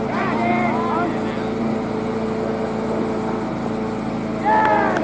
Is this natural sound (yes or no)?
yes